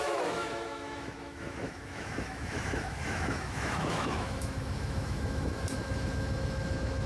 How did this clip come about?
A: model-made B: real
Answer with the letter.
A